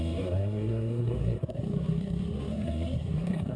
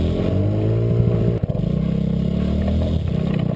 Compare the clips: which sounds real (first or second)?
second